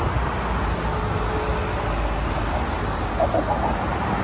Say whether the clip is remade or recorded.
recorded